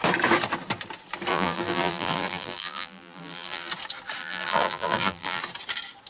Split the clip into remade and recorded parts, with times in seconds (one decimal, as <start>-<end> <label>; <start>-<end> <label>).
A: 0.0-1.3 recorded; 1.3-3.7 remade; 3.7-4.2 recorded; 4.2-5.4 remade; 5.4-6.1 recorded